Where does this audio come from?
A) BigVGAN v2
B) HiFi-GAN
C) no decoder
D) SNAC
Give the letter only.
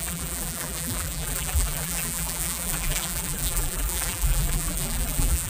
A